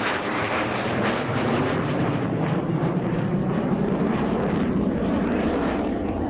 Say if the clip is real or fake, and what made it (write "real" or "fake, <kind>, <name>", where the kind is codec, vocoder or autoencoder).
fake, vocoder, BigVGAN v2